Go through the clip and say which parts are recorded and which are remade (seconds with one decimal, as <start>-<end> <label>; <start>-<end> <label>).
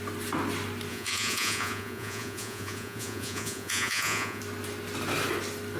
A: 0.0-0.9 recorded; 0.9-4.4 remade; 4.4-5.8 recorded